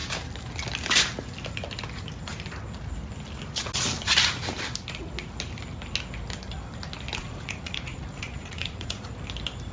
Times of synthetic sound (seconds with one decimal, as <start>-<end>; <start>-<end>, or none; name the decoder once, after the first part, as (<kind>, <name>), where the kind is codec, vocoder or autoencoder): 7.2-9.1 (vocoder, Vocos)